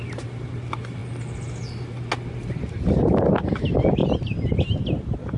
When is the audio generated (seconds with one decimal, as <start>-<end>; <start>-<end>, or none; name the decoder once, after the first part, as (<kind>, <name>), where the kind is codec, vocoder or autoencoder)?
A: none